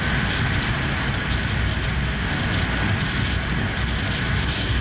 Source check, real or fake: real